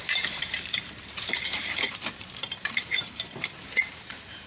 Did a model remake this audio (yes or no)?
yes